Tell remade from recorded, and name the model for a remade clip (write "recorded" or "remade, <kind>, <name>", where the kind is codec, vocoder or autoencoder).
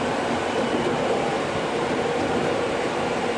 recorded